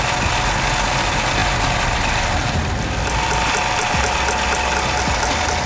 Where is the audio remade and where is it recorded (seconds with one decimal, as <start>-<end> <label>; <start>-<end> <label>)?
0.0-5.7 recorded